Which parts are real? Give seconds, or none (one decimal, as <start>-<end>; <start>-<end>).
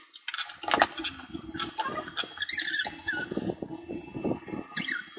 0.0-5.2